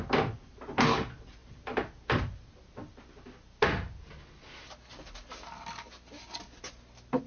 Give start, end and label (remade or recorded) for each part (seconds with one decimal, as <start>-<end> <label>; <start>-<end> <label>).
0.0-7.3 recorded